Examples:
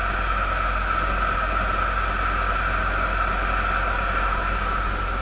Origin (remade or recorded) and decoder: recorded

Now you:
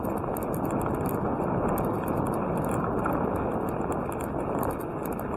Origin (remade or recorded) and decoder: recorded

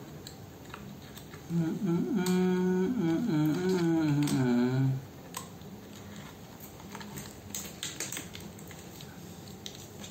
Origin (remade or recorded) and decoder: recorded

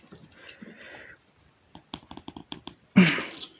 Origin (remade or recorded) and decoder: recorded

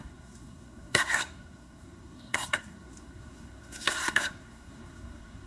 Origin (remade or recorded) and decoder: remade, codec, SNAC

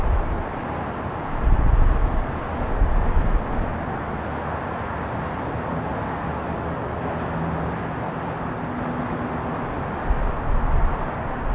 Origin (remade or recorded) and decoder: recorded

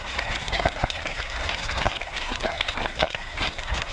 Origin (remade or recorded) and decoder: remade, codec, SNAC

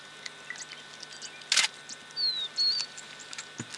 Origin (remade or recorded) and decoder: recorded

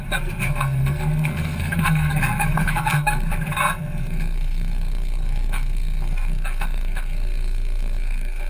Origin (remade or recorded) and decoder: remade, codec, SNAC